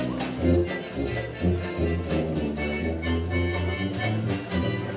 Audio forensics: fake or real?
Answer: real